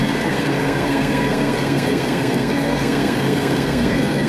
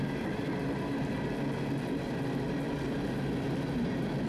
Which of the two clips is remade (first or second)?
first